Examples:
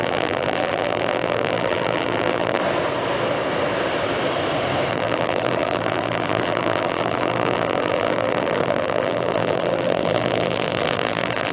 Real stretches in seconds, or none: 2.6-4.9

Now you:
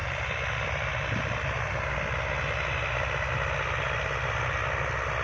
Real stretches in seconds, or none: 1.7-5.2

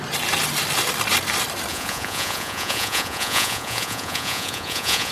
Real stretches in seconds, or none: 0.0-1.7

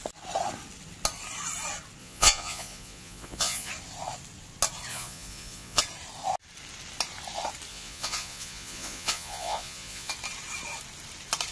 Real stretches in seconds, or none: 0.0-2.0; 3.7-4.9; 5.8-7.7; 10.1-11.5